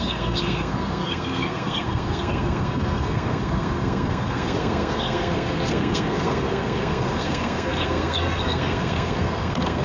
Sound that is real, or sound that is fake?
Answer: fake